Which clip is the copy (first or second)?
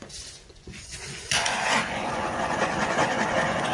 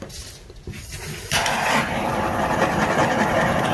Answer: first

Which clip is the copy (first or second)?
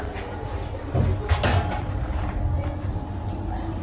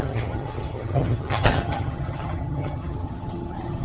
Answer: second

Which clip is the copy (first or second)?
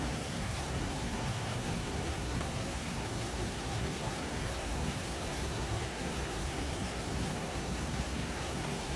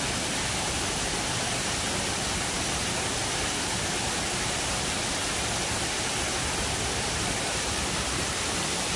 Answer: first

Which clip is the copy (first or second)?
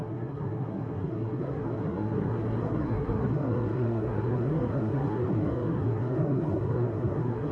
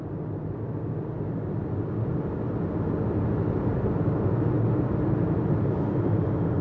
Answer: first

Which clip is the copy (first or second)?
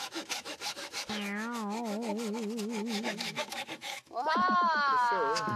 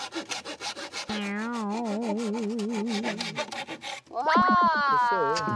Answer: first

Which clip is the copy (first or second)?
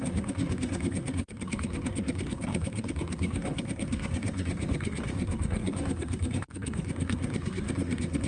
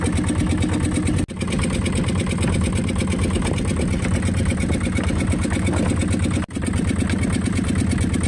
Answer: first